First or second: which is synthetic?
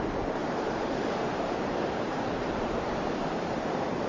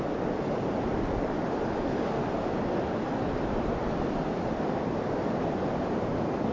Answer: first